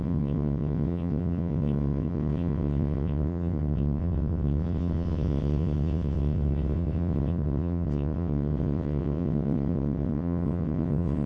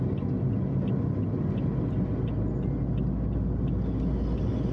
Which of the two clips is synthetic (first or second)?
first